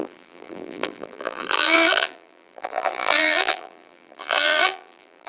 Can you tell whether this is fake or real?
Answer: fake